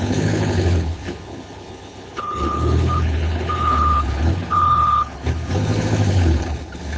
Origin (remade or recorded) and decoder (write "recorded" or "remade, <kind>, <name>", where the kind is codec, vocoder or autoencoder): remade, codec, HILCodec